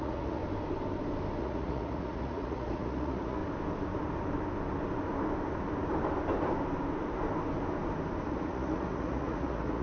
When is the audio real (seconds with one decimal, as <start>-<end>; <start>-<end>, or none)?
0.4-1.4; 3.4-8.3